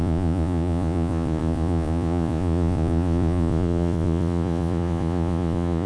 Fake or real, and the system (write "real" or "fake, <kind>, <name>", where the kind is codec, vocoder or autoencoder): fake, vocoder, Vocos